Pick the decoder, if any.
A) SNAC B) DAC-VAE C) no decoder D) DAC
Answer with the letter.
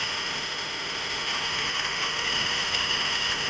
B